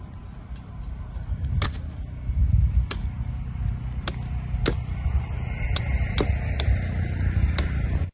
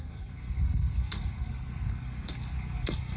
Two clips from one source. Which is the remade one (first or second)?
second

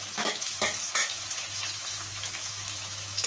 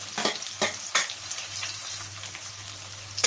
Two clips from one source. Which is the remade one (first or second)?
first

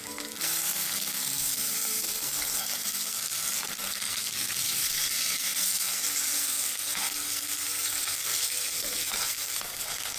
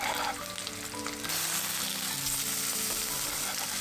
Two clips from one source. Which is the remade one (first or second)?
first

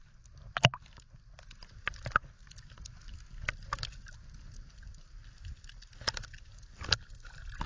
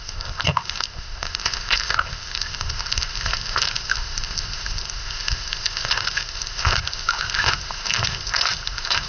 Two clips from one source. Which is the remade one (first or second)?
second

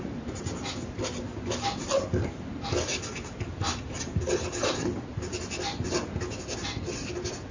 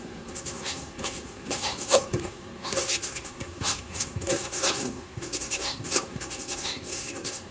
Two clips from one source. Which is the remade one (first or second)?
second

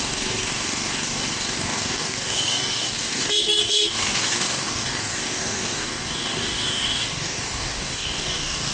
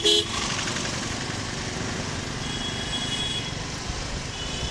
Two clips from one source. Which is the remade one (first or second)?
first